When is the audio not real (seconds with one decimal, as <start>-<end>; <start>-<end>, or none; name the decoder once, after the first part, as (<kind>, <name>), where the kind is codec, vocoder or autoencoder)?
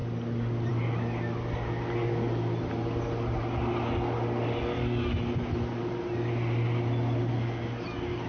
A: none